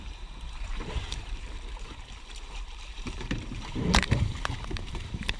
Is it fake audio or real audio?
fake